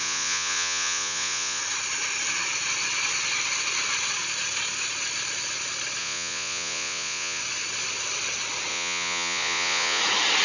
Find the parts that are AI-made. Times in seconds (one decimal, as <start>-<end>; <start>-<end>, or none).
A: 0.0-1.6; 6.0-7.4; 8.7-10.0